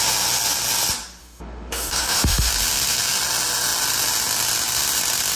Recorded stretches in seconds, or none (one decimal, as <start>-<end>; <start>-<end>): 0.0-1.2; 2.5-5.4